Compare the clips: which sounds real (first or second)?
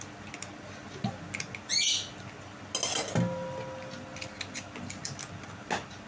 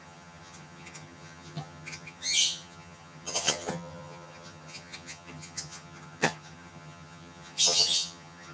first